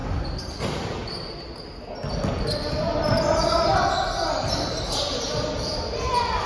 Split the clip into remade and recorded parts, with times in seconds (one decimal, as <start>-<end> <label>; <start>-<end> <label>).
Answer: 0.0-6.5 recorded